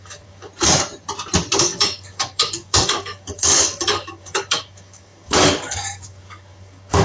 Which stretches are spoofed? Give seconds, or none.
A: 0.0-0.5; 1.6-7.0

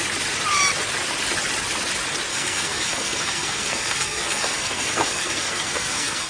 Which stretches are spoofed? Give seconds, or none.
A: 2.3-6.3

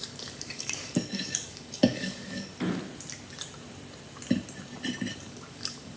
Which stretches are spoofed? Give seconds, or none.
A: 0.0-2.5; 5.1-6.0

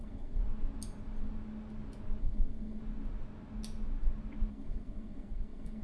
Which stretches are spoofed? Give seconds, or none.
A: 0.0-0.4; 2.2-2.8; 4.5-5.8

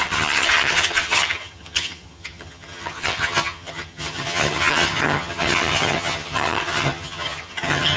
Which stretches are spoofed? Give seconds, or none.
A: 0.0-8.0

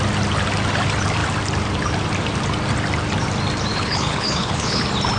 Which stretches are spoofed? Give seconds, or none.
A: 3.7-4.8

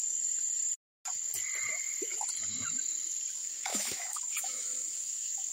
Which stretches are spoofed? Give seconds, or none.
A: 3.3-5.5

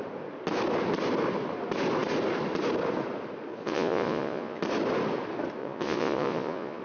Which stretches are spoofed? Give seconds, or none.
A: 3.5-4.6; 5.6-6.8